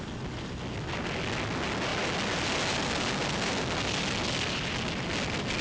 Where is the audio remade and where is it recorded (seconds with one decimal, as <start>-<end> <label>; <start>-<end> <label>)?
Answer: 0.0-5.6 recorded